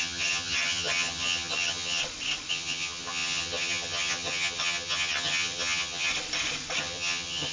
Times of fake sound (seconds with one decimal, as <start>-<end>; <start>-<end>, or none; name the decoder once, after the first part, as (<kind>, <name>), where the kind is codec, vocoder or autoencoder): 0.0-2.0 (vocoder, HiFi-GAN); 2.5-6.1; 6.8-7.5